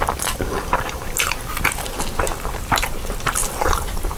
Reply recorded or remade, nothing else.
remade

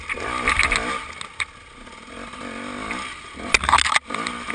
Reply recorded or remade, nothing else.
recorded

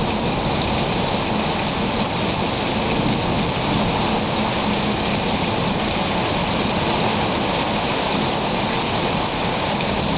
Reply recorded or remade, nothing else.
recorded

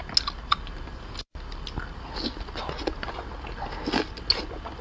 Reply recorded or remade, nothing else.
recorded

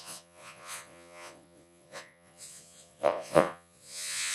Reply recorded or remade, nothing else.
remade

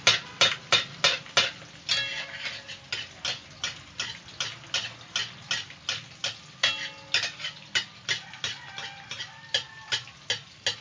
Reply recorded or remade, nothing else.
recorded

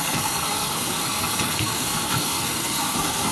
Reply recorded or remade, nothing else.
remade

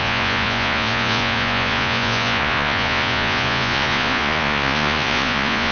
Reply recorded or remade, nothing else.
remade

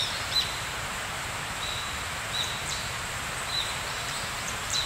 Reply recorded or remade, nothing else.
remade